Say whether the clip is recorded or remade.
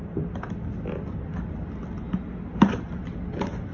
remade